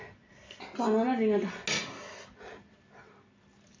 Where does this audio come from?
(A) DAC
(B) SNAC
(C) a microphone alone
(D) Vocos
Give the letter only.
C